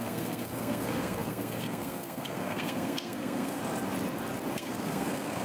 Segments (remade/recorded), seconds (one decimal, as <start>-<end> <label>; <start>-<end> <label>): 0.0-3.6 remade; 3.6-4.5 recorded; 4.5-5.4 remade